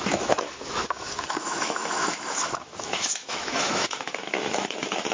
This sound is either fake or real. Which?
fake